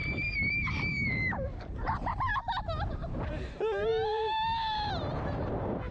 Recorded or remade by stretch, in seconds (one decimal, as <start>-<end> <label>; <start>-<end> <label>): 0.0-2.3 remade; 2.3-2.9 recorded; 2.9-5.9 remade